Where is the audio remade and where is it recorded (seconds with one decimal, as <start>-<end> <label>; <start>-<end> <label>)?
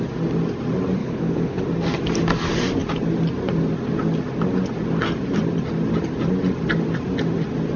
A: 0.0-1.0 recorded; 1.0-1.6 remade; 1.6-7.8 recorded